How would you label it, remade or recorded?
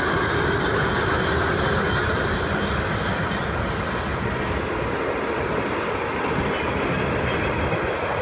recorded